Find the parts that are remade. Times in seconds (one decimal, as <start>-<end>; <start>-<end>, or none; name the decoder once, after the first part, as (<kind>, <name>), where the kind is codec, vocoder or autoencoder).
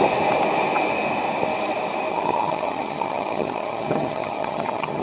2.1-5.0 (vocoder, HiFi-GAN)